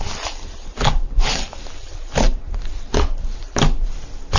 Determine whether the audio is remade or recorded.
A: recorded